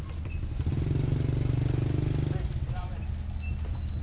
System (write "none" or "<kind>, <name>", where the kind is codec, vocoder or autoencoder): none